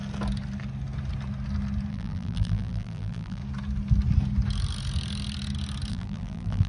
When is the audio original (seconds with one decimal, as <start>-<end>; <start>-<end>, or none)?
0.0-1.9; 3.4-5.9